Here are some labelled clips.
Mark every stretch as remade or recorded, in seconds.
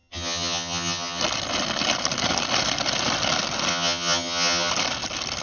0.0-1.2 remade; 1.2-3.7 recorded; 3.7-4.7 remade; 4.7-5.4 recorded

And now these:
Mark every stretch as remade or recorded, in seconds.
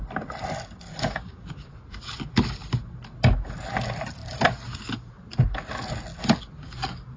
0.0-0.9 recorded; 0.9-1.5 remade; 1.5-7.2 recorded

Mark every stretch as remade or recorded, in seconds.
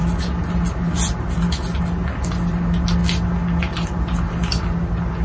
0.0-5.2 recorded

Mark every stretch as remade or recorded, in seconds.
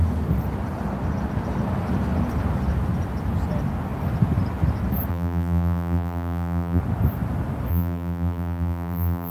0.0-5.1 recorded; 5.1-6.8 remade; 6.8-7.7 recorded; 7.7-9.3 remade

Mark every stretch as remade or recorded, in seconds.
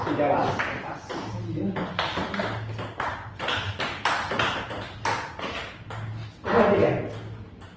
0.0-0.4 recorded; 0.4-4.1 remade; 4.1-6.2 recorded; 6.2-7.8 remade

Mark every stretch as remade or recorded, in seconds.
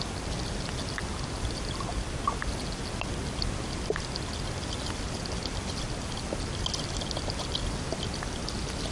0.0-8.9 recorded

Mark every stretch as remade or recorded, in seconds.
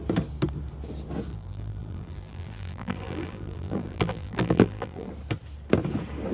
0.0-1.3 recorded; 1.3-5.1 remade; 5.1-6.3 recorded